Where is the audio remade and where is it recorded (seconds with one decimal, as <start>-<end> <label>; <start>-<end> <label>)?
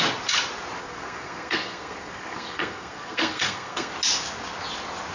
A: 0.0-0.8 recorded; 0.8-3.9 remade; 3.9-5.1 recorded